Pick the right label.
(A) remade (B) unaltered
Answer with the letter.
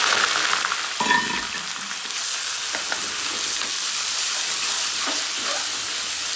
B